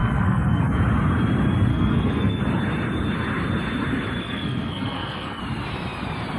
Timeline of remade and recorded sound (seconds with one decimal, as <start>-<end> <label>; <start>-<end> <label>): 0.0-0.6 remade; 0.6-1.7 recorded; 1.7-2.4 remade; 2.4-4.2 recorded; 4.2-5.4 remade; 5.4-6.4 recorded